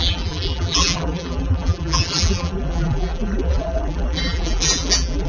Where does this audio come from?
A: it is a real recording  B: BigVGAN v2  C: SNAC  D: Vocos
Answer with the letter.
B